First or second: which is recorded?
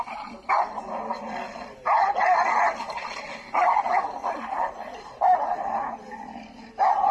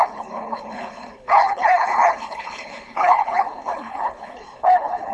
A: first